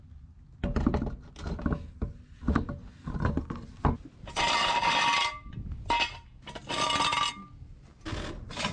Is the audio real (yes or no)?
yes